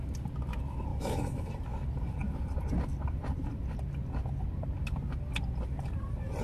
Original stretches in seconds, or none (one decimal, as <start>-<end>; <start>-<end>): 0.0-0.9; 1.5-6.4